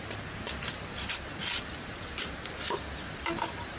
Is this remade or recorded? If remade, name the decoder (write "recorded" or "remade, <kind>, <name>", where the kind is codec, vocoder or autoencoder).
recorded